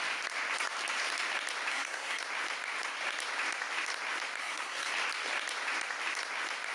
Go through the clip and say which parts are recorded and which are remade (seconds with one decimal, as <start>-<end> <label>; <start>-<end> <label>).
0.0-1.7 recorded; 1.7-2.2 remade; 2.2-4.4 recorded; 4.4-4.9 remade; 4.9-6.7 recorded